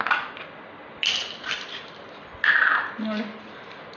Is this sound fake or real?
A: real